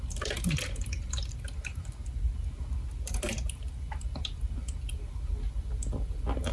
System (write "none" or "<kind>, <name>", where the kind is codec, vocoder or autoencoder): none